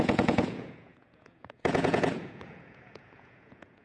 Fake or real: fake